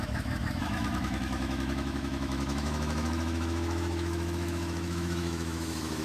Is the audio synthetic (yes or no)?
yes